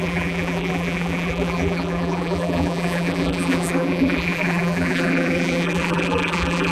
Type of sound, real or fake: fake